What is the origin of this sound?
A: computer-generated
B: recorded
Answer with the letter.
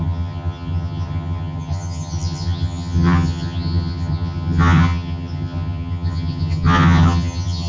A